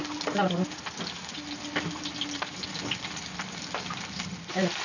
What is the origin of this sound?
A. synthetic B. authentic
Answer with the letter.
B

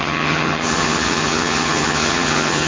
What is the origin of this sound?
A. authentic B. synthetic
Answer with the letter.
B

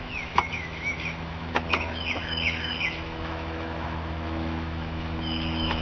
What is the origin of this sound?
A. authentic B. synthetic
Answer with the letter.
B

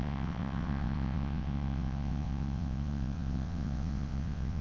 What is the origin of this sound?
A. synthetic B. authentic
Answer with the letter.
A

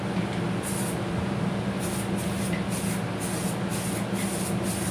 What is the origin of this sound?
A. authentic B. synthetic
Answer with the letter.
A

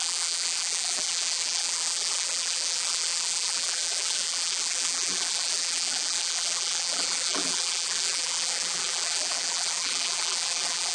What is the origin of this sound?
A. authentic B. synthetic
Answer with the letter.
B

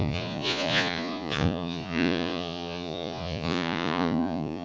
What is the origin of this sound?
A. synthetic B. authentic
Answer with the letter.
A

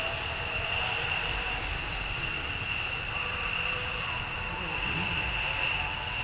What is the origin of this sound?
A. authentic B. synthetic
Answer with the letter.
B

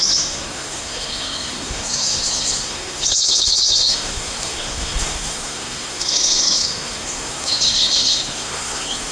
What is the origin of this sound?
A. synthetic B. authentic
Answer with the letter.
A